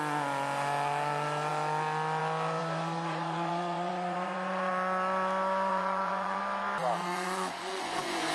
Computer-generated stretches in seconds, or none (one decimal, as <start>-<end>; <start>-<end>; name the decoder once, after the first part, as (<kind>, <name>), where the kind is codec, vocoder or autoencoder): 2.6-4.7 (vocoder, Vocos); 5.7-6.4; 7.0-8.3